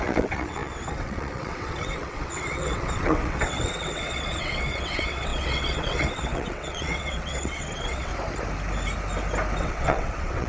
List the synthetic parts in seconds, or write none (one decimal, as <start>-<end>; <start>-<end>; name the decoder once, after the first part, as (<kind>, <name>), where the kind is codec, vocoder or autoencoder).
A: 0.0-8.1 (vocoder, WaveNeXt); 9.6-10.5